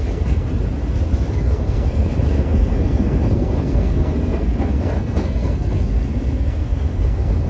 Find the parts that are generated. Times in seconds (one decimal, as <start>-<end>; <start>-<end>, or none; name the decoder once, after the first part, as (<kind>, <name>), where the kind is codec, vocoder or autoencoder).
0.0-0.5 (codec, SNAC); 1.3-7.5